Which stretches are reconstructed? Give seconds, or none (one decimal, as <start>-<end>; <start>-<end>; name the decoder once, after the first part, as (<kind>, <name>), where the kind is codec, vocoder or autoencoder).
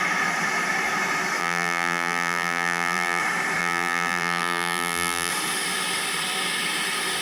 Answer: 1.4-3.2 (vocoder, BigVGAN v2); 3.6-5.3